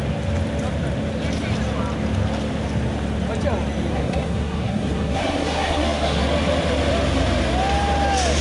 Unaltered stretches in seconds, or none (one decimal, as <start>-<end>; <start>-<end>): 0.0-3.9; 6.2-8.4